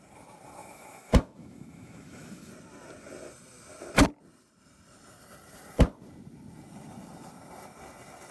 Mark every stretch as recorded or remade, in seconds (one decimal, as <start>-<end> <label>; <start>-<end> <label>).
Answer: 0.0-0.6 recorded; 0.6-2.5 remade; 2.5-8.3 recorded